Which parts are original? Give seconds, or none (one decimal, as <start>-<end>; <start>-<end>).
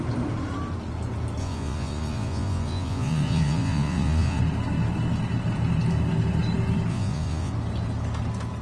0.0-1.4; 4.4-6.9; 7.5-8.6